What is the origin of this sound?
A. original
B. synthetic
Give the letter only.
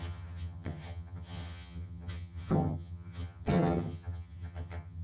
B